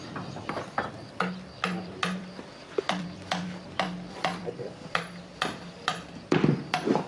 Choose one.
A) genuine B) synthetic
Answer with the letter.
B